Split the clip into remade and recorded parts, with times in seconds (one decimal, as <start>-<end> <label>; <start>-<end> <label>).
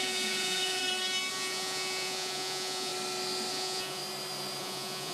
0.0-0.8 remade; 0.8-1.3 recorded; 1.3-2.9 remade; 2.9-3.5 recorded; 3.5-4.0 remade; 4.0-4.6 recorded; 4.6-5.1 remade